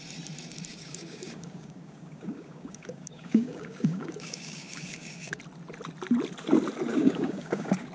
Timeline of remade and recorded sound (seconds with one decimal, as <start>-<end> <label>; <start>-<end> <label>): 0.0-0.7 recorded; 0.7-5.4 remade; 5.4-6.9 recorded; 6.9-7.9 remade